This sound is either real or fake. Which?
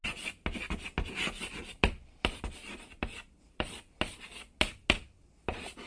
real